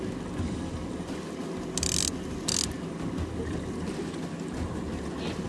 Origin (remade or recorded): recorded